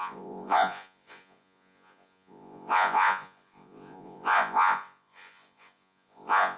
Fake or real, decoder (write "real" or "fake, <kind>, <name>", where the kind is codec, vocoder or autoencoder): fake, vocoder, Vocos